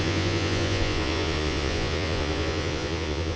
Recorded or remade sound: remade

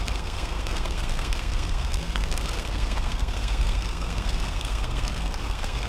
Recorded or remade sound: remade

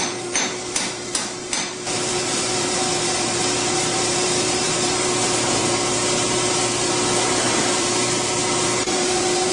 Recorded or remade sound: remade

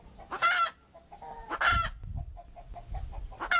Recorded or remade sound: recorded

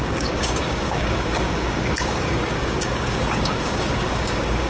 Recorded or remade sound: remade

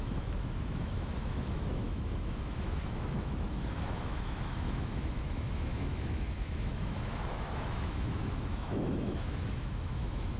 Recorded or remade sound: remade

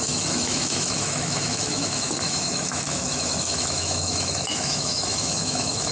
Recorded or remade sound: remade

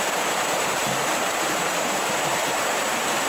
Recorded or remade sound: remade